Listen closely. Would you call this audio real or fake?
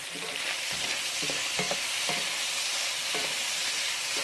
fake